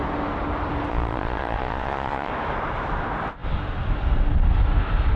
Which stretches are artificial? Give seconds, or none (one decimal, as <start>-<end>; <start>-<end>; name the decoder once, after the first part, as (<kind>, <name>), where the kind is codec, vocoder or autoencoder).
0.9-2.3 (vocoder, Vocos)